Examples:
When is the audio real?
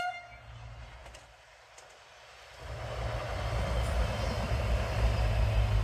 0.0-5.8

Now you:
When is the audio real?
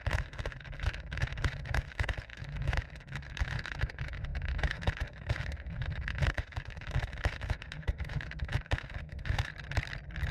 9.5-10.3